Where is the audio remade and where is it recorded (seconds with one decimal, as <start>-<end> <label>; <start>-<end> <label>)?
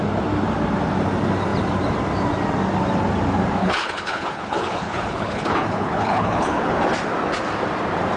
0.0-3.6 recorded; 3.6-6.8 remade; 6.8-8.2 recorded